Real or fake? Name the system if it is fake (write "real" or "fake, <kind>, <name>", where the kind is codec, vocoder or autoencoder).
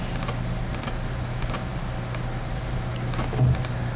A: real